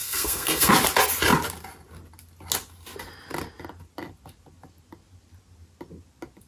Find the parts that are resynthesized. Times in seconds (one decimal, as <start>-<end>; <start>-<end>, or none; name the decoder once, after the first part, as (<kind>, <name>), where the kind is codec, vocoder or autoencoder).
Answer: 0.0-0.7 (codec, SNAC)